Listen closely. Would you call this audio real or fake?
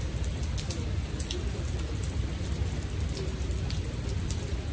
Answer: real